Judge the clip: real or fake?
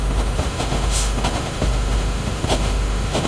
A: fake